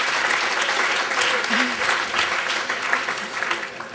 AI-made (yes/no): no